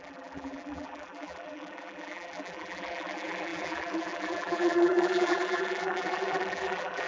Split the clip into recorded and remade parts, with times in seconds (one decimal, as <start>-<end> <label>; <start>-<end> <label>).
0.0-7.1 remade